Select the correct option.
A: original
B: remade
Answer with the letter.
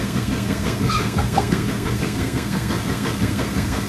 B